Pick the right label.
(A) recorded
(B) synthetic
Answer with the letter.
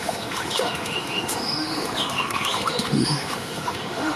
B